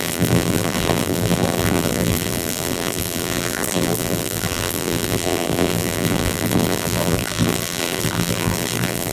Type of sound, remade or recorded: remade